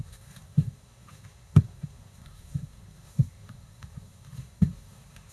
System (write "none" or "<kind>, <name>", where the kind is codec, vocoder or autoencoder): codec, SNAC